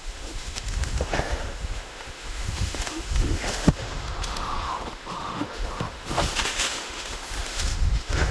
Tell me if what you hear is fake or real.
fake